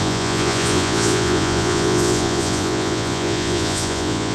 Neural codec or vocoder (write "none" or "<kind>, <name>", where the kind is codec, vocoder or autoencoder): vocoder, Vocos